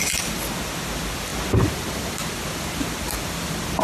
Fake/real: real